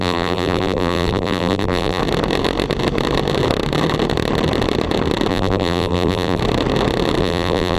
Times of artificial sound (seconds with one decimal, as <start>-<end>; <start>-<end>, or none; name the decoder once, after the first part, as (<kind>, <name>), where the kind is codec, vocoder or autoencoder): 0.0-2.0 (vocoder, BigVGAN v2); 5.3-6.4; 7.2-7.8